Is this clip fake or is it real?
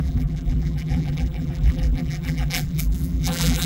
fake